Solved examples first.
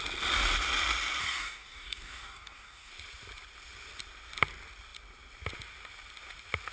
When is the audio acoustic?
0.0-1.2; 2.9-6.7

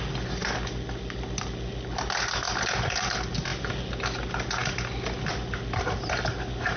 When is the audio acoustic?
0.0-6.8

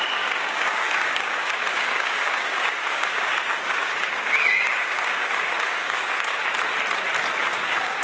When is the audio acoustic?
6.4-7.4